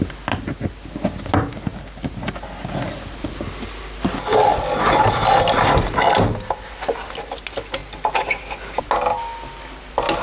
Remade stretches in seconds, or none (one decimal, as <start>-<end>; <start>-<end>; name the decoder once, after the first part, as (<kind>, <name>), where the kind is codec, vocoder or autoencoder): none